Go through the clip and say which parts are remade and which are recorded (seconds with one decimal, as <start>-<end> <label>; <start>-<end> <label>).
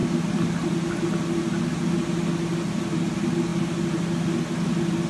0.0-5.1 recorded